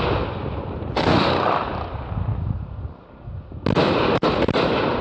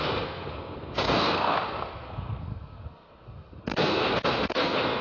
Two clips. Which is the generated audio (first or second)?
second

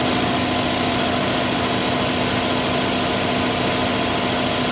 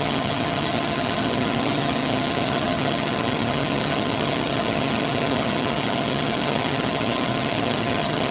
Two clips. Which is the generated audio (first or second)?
second